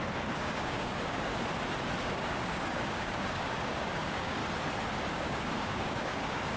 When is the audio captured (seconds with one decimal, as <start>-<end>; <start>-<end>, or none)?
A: 1.3-2.0; 4.4-5.1